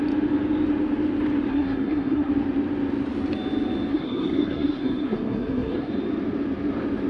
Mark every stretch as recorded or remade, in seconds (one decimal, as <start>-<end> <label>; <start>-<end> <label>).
0.0-1.5 recorded; 1.5-2.3 remade; 2.3-3.9 recorded; 3.9-5.9 remade; 5.9-7.1 recorded